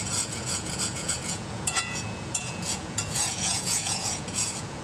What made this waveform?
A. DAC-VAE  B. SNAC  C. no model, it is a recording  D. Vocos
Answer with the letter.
D